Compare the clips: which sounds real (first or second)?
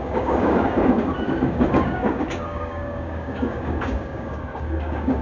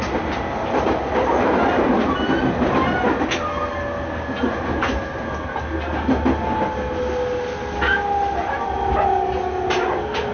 second